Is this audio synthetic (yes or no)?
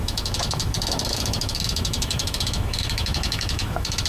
yes